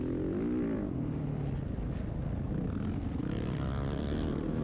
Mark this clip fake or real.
real